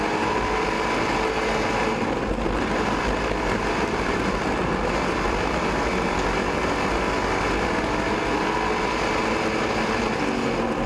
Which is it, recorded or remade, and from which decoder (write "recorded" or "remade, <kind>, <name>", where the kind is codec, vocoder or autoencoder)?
recorded